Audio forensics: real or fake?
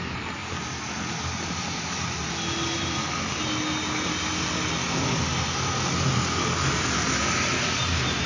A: real